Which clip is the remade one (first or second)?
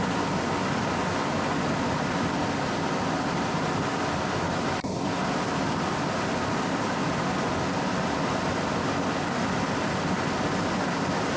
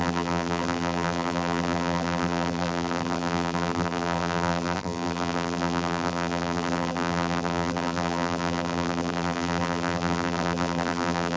second